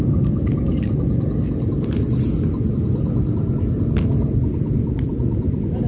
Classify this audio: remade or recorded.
recorded